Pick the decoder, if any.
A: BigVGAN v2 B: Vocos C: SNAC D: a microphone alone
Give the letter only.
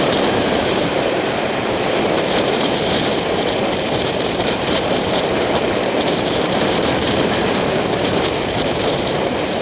A